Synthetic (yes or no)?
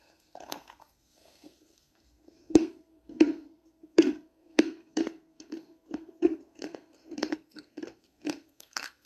yes